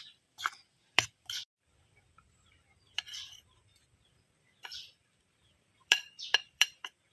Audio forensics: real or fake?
fake